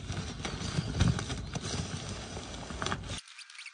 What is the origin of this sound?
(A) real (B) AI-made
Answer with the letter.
A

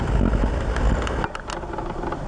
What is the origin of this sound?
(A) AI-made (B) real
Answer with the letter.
B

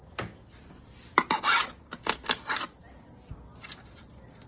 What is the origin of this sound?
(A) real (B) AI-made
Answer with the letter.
A